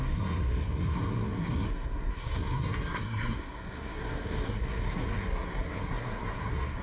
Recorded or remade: remade